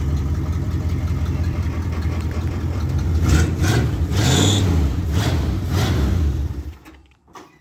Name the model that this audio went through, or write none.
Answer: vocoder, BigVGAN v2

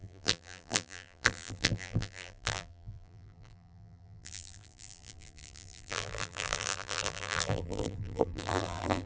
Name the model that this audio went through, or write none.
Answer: vocoder, BigVGAN v2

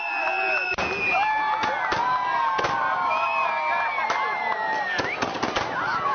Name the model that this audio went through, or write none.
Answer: none